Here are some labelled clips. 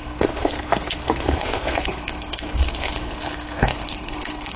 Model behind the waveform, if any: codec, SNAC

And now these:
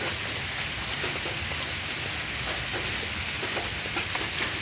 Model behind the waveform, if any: none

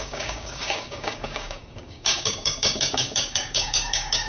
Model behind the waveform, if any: codec, DAC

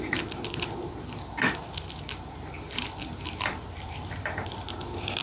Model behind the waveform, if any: vocoder, BigVGAN v2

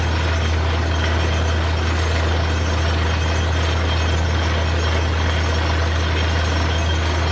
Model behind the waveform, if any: none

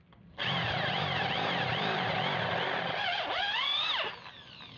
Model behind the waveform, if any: vocoder, BigVGAN v2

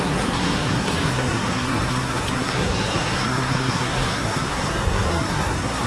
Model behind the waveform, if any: codec, SNAC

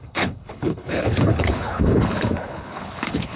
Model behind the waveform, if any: codec, HILCodec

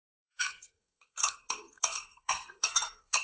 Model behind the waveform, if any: codec, SNAC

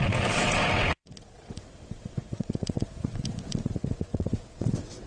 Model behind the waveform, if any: vocoder, WaveNeXt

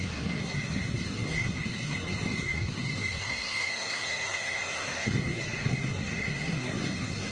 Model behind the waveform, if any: codec, SNAC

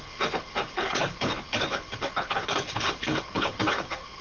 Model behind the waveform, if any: codec, HILCodec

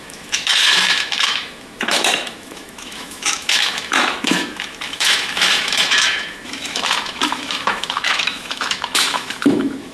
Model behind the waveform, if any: autoencoder, DAC-VAE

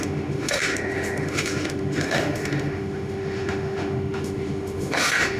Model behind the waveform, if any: autoencoder, DAC-VAE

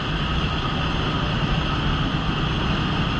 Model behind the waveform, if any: none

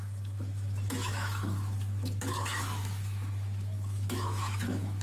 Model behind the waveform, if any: autoencoder, DAC-VAE